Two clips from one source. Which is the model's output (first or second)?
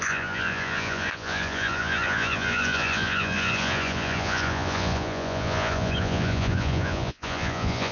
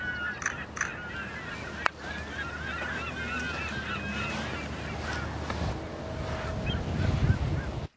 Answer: first